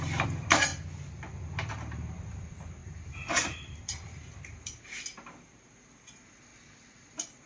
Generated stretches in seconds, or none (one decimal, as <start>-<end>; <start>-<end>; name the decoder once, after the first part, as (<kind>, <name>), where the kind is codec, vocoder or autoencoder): 0.0-0.7 (vocoder, BigVGAN v2); 1.7-7.5